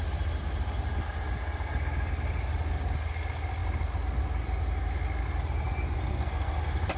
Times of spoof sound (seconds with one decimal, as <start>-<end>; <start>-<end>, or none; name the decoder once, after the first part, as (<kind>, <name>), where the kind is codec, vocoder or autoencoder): 6.1-6.6 (codec, SNAC)